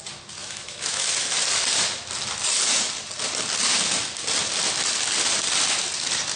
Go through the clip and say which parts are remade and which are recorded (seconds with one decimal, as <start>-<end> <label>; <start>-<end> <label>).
0.0-0.4 recorded; 0.4-1.1 remade; 1.1-6.4 recorded